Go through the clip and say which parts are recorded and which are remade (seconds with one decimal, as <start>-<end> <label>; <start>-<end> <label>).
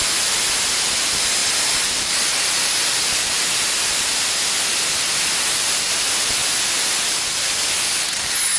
0.0-8.6 recorded